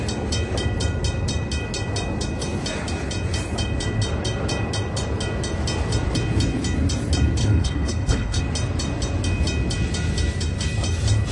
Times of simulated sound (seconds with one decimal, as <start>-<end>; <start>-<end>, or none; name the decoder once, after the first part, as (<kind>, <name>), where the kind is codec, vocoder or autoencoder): 7.4-8.4 (codec, HILCodec)